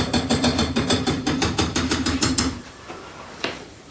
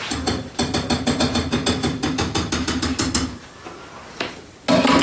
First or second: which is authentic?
second